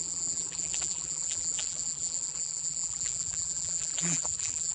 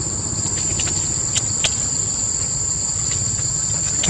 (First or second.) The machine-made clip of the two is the first